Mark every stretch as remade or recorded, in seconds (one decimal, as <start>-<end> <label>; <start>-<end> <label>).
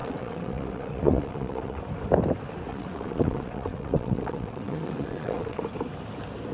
0.0-1.8 remade; 1.8-2.7 recorded; 2.7-5.6 remade; 5.6-6.5 recorded